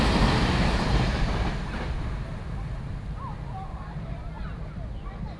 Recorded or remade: recorded